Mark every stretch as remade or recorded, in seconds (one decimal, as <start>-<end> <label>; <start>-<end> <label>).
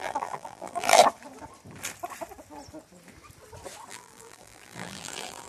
0.0-1.0 remade; 1.0-3.9 recorded; 3.9-5.5 remade